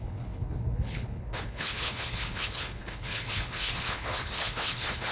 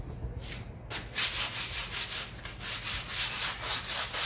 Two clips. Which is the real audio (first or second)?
second